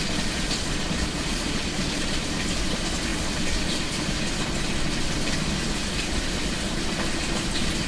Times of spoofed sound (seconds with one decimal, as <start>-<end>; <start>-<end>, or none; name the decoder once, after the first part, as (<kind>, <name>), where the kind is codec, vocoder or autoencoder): 1.3-2.2 (vocoder, Vocos)